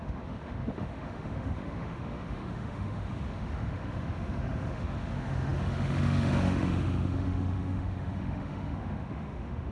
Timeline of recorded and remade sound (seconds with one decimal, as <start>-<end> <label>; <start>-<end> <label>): 0.0-9.7 remade